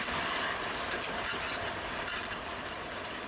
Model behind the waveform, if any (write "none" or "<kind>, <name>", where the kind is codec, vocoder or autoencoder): none